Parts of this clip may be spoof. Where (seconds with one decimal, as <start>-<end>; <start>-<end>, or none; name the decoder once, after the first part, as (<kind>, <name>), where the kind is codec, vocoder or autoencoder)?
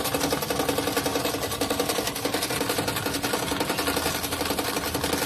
none